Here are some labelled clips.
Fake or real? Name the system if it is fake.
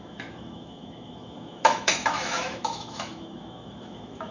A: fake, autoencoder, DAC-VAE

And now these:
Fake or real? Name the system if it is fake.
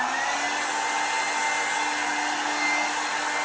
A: real